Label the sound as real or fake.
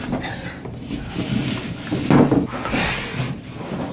real